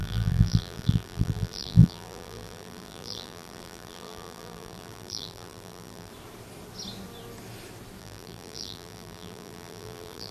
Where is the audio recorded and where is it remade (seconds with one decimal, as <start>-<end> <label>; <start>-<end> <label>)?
0.0-6.1 remade; 6.1-8.0 recorded; 8.0-10.3 remade